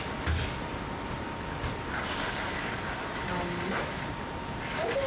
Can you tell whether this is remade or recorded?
recorded